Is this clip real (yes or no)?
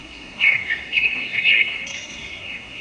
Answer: no